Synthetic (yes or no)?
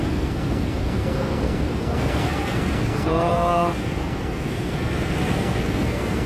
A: yes